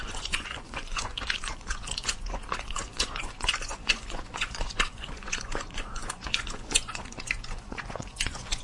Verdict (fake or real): fake